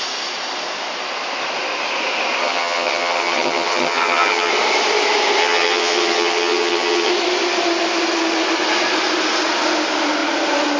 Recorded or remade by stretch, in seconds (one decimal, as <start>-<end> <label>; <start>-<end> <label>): 0.0-2.4 recorded; 2.4-4.5 remade; 4.5-5.4 recorded; 5.4-7.1 remade; 7.1-10.8 recorded